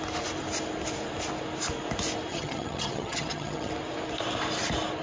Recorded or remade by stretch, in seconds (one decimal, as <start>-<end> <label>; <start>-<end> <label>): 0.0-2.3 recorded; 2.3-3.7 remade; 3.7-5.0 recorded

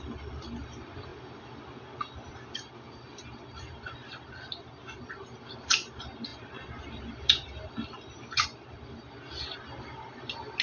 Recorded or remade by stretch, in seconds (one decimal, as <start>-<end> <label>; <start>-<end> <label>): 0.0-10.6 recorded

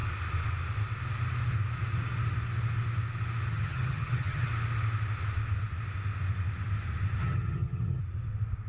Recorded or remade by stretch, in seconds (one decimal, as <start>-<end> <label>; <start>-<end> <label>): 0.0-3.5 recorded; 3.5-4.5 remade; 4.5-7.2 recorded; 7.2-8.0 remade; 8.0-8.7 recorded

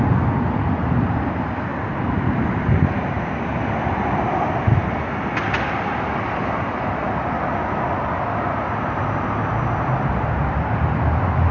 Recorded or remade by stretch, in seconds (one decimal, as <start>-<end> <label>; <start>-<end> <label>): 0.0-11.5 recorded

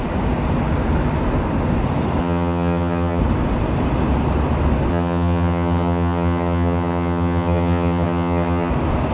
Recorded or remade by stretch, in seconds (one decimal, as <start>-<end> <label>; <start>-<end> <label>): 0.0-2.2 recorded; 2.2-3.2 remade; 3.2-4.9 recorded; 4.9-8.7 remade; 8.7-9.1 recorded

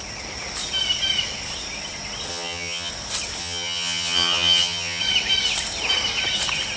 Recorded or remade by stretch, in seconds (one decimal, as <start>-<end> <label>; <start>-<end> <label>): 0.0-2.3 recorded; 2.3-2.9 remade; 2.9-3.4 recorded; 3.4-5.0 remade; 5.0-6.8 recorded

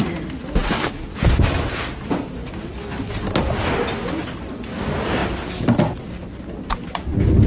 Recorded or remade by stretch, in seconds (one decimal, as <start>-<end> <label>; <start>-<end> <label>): 0.0-7.5 recorded